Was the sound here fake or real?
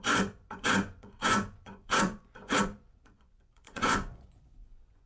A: fake